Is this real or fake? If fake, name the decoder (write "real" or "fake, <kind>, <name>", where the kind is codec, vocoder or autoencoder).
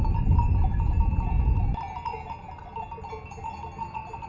real